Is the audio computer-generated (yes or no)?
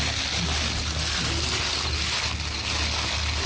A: no